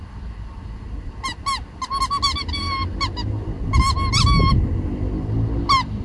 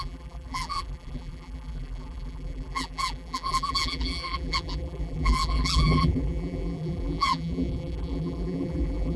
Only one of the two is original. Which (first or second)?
first